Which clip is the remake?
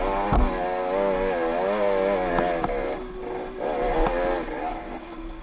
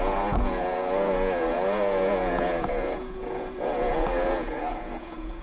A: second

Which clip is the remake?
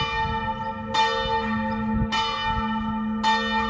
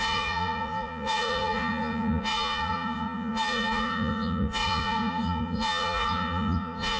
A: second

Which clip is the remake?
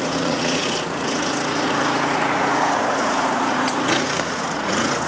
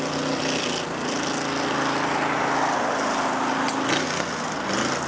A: first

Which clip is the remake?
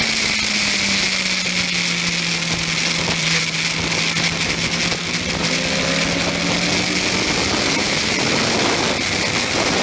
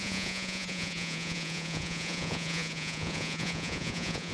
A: second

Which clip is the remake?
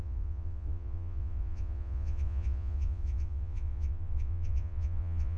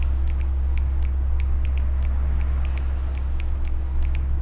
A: first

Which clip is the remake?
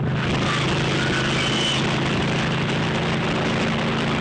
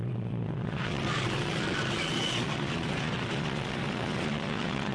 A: second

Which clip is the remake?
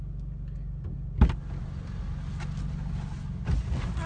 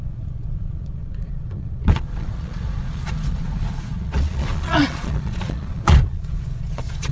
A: second